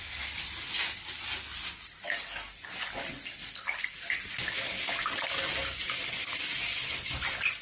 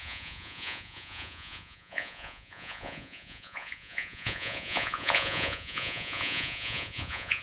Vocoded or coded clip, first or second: second